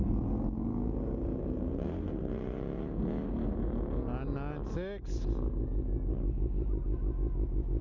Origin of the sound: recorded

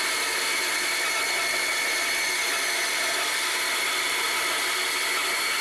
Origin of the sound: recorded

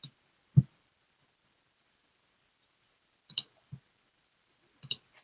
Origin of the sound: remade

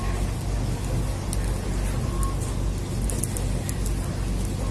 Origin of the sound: recorded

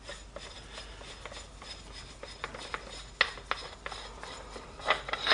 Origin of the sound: recorded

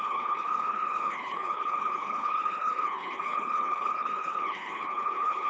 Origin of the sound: remade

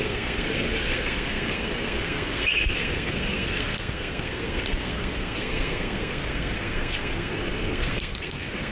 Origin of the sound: remade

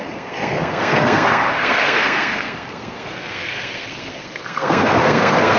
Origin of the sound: remade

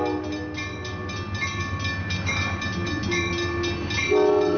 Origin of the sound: recorded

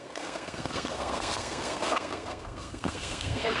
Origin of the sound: remade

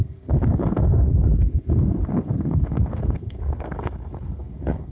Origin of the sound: remade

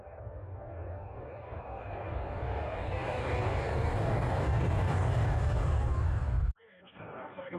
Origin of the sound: remade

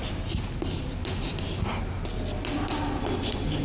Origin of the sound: recorded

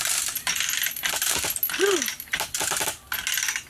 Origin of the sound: recorded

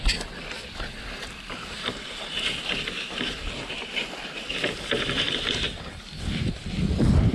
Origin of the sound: recorded